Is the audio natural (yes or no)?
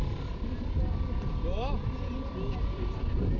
yes